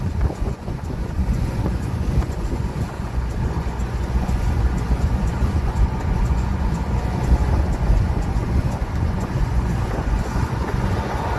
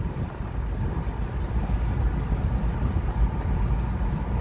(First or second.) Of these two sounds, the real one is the second